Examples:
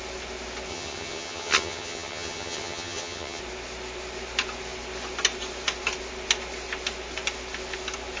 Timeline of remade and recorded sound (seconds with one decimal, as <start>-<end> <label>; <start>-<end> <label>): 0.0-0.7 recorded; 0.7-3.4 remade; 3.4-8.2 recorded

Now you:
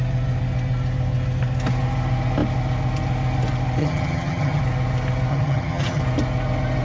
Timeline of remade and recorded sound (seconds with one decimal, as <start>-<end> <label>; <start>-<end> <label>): 0.0-3.8 recorded; 3.8-4.6 remade; 4.6-5.3 recorded; 5.3-6.0 remade; 6.0-6.8 recorded

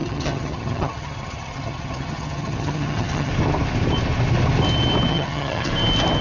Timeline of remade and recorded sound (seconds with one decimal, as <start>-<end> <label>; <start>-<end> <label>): 0.0-3.3 remade; 3.3-5.1 recorded; 5.1-5.7 remade; 5.7-6.2 recorded